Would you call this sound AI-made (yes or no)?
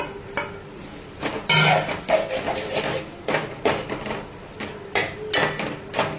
no